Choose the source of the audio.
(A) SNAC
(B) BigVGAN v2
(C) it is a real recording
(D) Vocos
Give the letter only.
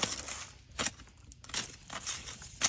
C